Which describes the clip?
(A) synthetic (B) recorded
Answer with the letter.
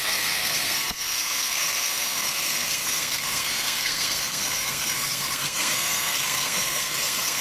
A